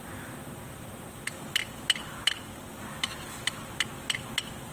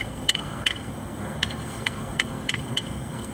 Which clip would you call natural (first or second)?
first